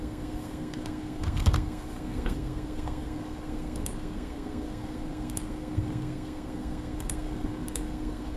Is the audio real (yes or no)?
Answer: no